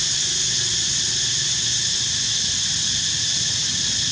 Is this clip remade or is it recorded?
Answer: recorded